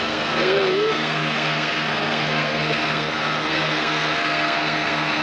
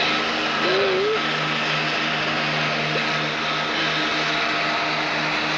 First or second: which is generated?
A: first